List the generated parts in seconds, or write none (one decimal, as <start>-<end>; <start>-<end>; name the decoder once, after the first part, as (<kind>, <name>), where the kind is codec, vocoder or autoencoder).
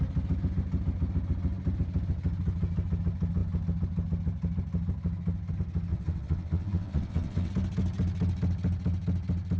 5.9-7.5 (vocoder, WaveNeXt)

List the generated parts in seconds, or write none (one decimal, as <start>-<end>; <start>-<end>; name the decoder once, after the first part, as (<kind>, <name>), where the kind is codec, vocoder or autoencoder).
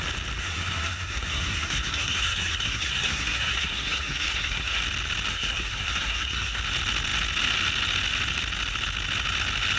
0.4-4.8 (codec, SNAC); 5.3-6.6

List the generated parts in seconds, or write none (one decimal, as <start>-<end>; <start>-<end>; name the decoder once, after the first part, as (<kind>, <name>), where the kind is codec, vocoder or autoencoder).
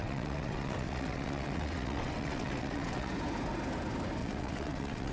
0.0-3.1 (vocoder, WaveNeXt); 4.2-5.1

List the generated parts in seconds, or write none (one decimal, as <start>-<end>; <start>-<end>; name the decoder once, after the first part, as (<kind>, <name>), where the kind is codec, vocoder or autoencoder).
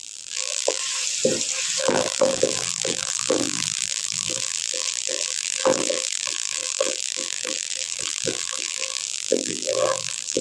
0.0-0.8 (vocoder, BigVGAN v2); 1.8-10.4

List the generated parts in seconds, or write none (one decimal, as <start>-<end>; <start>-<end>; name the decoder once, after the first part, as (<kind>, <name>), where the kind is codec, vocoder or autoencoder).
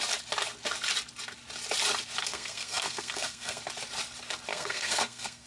2.2-3.6 (codec, SNAC); 4.5-5.5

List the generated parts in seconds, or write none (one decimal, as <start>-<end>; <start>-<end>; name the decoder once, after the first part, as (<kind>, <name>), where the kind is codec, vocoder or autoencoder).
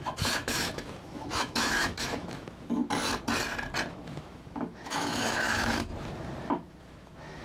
0.0-2.8 (autoencoder, DAC-VAE); 3.9-5.9; 6.5-7.4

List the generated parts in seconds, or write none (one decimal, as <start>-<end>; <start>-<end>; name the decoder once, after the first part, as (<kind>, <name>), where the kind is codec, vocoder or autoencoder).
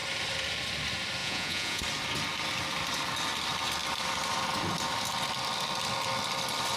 1.2-1.8 (vocoder, Vocos)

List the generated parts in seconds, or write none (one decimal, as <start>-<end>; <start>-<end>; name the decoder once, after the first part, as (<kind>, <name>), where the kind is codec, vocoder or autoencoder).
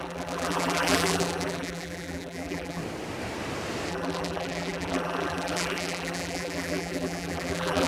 0.0-2.8 (vocoder, BigVGAN v2); 3.9-7.9